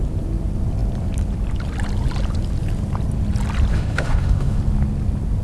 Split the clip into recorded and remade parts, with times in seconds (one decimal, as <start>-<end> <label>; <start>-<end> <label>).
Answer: 0.0-3.7 recorded; 3.7-4.6 remade; 4.6-5.4 recorded